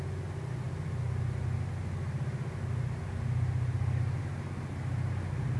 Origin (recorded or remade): recorded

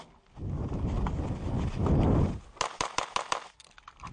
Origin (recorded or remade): recorded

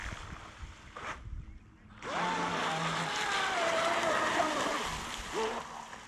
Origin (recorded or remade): recorded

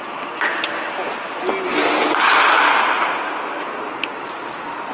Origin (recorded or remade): recorded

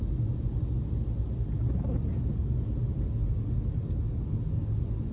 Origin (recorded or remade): recorded